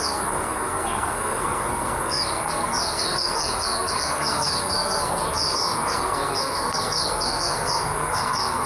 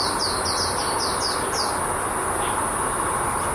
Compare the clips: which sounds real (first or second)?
second